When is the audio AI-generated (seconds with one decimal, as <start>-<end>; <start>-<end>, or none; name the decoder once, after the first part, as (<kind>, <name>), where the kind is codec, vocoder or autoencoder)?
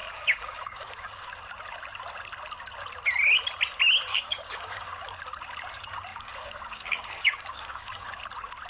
0.0-1.3 (codec, DAC); 4.1-5.2; 6.1-8.2